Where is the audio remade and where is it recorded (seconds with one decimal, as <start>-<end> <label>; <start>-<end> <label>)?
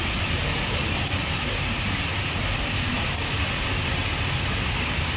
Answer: 0.0-5.2 recorded